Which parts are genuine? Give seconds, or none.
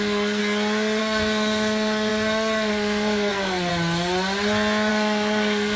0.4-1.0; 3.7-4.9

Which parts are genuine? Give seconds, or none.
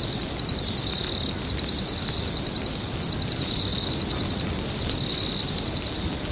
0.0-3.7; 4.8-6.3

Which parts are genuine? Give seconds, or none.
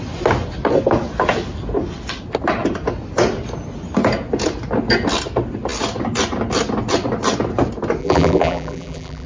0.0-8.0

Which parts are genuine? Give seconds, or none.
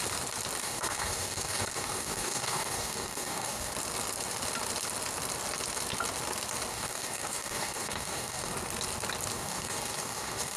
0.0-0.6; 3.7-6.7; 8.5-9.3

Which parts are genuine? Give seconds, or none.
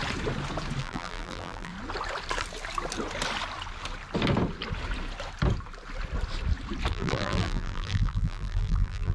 0.0-0.8; 1.7-6.9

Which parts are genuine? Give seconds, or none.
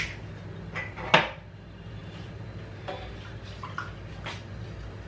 0.0-5.1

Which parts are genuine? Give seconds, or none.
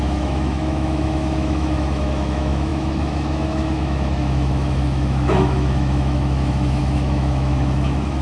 none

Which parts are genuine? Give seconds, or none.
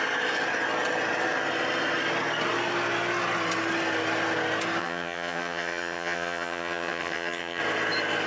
0.0-4.8; 7.6-8.3